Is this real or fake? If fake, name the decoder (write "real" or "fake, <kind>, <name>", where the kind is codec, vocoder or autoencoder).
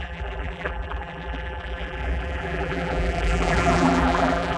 fake, vocoder, BigVGAN v2